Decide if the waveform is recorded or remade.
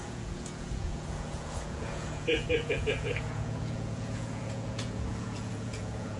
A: remade